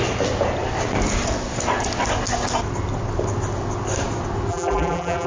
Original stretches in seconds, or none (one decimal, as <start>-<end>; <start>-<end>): 0.0-4.5